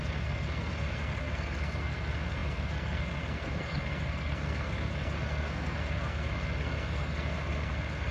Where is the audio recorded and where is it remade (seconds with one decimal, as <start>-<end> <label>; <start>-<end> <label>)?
0.0-8.1 remade